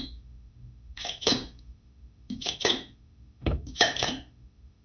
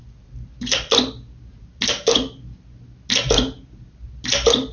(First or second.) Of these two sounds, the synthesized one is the first